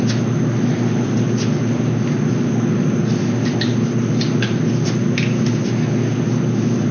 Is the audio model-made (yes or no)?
no